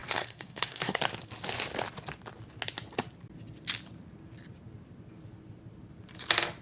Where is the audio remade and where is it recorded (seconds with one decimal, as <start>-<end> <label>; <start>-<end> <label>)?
0.0-1.0 remade; 1.0-6.6 recorded